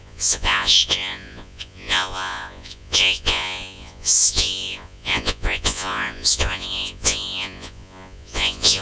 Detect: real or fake fake